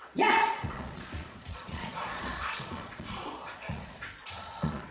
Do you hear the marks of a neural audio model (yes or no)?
yes